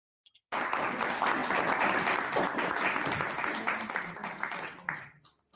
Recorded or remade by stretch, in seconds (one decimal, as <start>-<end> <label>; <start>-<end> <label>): 0.0-1.4 recorded; 1.4-2.7 remade; 2.7-5.6 recorded